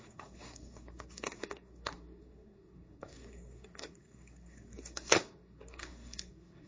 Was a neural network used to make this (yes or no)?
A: yes